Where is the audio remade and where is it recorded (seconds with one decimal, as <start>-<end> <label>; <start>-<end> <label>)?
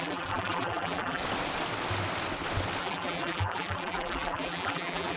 0.0-1.2 remade; 1.2-2.8 recorded; 2.8-5.2 remade